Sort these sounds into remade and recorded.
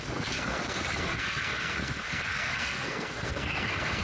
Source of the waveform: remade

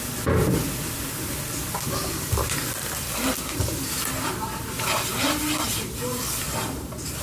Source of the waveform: recorded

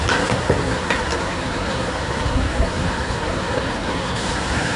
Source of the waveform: remade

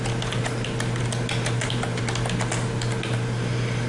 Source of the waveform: recorded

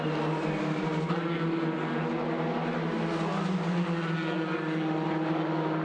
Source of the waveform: recorded